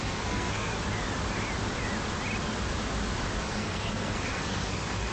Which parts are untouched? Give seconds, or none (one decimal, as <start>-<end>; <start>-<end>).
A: 0.7-3.4